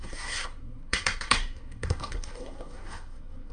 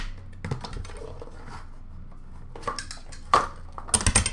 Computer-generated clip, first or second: first